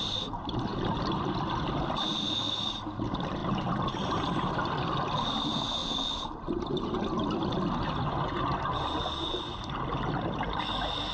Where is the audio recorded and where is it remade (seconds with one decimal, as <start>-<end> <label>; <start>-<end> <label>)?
0.0-11.1 recorded